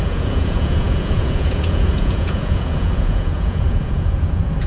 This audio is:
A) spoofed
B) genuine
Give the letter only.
A